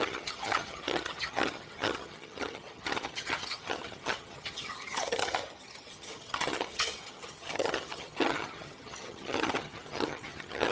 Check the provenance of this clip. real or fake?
fake